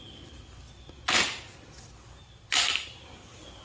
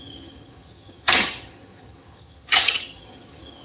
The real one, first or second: first